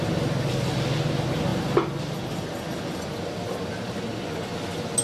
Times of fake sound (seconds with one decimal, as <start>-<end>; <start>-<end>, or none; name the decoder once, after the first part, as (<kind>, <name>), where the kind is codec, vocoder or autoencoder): none